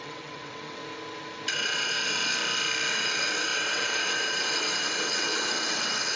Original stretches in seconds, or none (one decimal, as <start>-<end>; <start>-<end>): 0.8-1.5; 2.3-2.9